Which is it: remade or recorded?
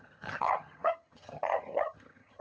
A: remade